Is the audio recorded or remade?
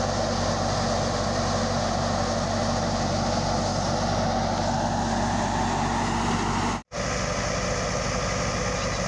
recorded